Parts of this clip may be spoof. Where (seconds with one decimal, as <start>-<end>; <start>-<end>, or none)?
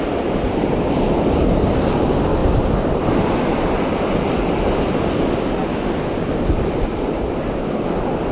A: none